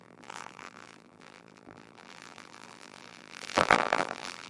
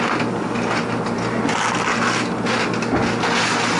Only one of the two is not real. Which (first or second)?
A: first